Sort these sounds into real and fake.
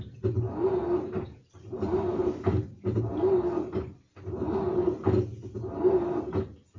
real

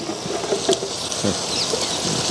real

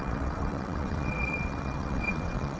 fake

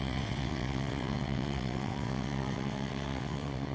fake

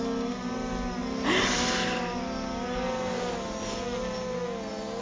real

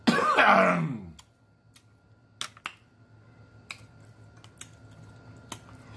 real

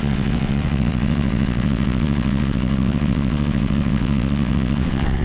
fake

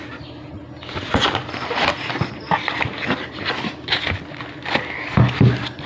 real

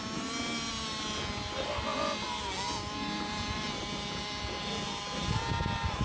real